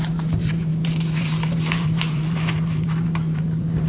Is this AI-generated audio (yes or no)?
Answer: yes